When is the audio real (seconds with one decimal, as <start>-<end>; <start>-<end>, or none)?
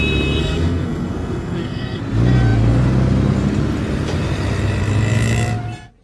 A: 0.0-0.4; 2.0-6.0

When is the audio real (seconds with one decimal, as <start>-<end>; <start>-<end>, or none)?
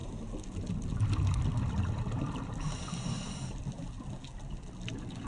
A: 0.0-5.3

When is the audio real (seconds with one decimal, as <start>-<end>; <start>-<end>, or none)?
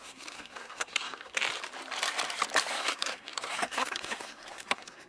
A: 1.4-2.7